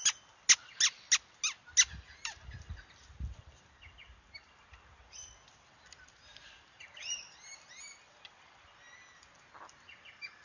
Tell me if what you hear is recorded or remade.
recorded